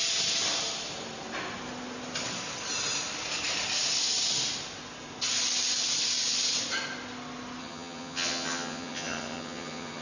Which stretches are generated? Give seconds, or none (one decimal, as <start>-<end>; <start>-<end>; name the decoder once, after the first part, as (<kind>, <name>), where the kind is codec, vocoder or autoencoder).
7.6-10.0 (vocoder, HiFi-GAN)